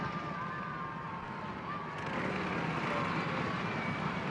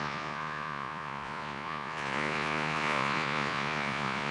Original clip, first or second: first